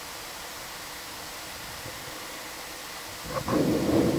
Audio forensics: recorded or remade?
recorded